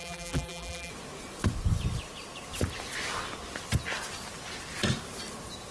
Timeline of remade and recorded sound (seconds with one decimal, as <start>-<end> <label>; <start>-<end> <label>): 0.0-0.9 remade; 0.9-5.7 recorded

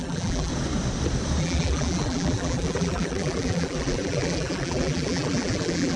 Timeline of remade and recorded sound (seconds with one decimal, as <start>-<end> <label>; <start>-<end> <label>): 0.0-0.5 remade; 0.5-1.4 recorded; 1.4-6.0 remade

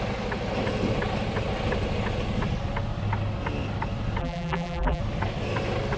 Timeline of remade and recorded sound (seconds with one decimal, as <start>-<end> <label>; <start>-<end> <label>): 0.0-4.2 recorded; 4.2-5.0 remade; 5.0-6.0 recorded